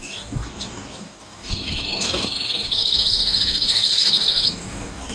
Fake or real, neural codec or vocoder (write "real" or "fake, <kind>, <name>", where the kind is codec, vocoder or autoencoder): fake, codec, DAC